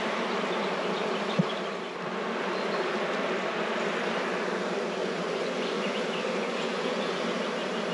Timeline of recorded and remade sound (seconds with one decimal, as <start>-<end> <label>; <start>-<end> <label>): 0.0-5.0 recorded; 5.0-7.2 remade; 7.2-7.9 recorded